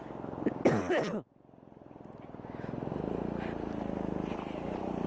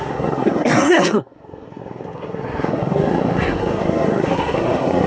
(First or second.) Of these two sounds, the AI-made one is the second